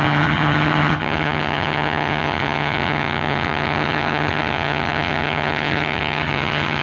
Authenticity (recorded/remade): remade